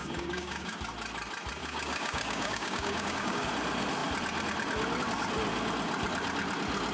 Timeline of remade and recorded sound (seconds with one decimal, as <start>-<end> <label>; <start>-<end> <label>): 0.0-0.8 remade; 0.8-1.6 recorded; 1.6-3.5 remade; 3.5-6.9 recorded

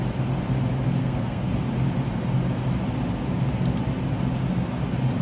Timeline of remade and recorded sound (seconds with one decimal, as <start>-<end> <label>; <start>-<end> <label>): 0.0-1.0 recorded; 1.0-1.5 remade; 1.5-5.2 recorded

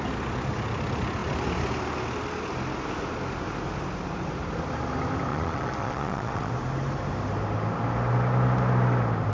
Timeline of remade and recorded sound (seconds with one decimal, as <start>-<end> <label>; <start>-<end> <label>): 0.0-5.3 recorded; 5.3-6.5 remade; 6.5-9.3 recorded

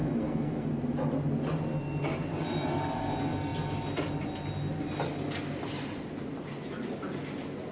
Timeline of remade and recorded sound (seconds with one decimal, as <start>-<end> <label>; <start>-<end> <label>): 0.0-0.7 remade; 0.7-7.7 recorded

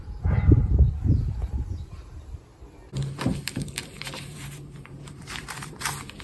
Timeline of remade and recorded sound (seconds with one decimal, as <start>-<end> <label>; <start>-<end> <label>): 0.0-2.5 remade; 2.5-3.5 recorded; 3.5-6.2 remade

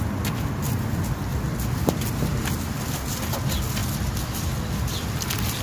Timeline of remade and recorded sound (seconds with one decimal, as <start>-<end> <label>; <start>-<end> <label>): 0.0-1.3 recorded; 1.3-2.8 remade; 2.8-5.6 recorded